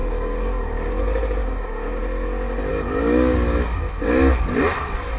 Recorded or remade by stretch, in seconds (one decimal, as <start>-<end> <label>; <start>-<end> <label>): 0.0-0.9 remade; 0.9-1.4 recorded; 1.4-2.0 remade; 2.0-2.7 recorded; 2.7-3.9 remade; 3.9-5.2 recorded